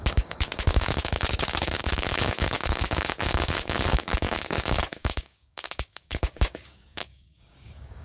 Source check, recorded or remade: remade